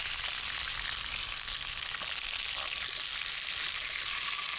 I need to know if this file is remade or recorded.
recorded